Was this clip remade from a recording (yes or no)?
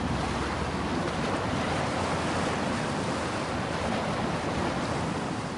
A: no